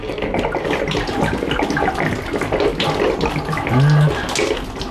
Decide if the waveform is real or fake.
real